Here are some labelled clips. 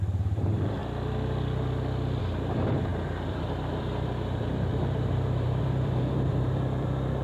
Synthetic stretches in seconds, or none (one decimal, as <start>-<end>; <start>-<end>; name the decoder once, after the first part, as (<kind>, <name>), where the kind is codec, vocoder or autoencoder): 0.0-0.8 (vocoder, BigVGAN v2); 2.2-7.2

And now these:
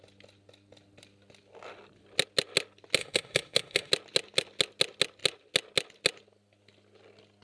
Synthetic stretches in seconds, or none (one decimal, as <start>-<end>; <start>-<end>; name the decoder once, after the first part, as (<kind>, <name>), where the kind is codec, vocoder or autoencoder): 3.0-3.9 (autoencoder, DAC-VAE)

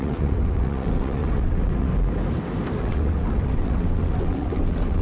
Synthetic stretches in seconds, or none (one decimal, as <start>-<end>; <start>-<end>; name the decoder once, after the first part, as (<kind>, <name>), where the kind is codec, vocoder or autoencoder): 0.0-1.9 (vocoder, WaveNeXt); 2.8-5.0

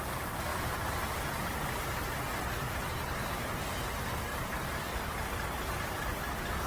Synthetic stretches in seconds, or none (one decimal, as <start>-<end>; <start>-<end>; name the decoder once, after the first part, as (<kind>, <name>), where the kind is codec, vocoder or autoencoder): 4.3-5.7 (vocoder, BigVGAN v2)